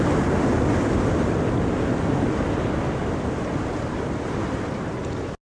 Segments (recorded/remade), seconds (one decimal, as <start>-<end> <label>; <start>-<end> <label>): 0.0-3.0 recorded; 3.0-4.9 remade; 4.9-5.6 recorded